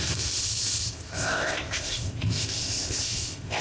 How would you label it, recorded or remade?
remade